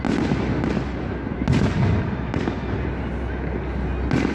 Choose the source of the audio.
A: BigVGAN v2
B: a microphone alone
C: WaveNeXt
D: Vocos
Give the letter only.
B